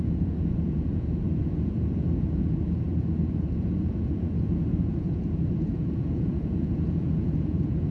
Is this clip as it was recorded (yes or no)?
no